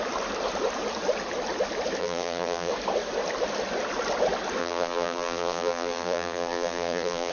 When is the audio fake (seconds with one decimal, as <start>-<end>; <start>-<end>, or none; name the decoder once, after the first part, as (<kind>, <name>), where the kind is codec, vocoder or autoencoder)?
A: 2.0-2.7 (vocoder, BigVGAN v2); 4.6-7.3